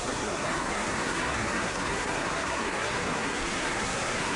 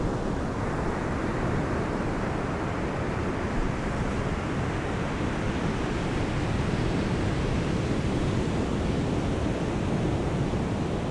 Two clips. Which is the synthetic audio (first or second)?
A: first